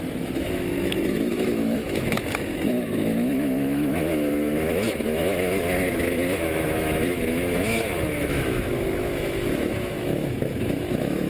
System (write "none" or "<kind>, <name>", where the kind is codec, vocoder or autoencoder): autoencoder, DAC-VAE